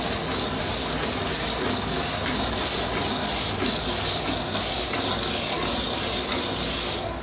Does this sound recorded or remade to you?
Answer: recorded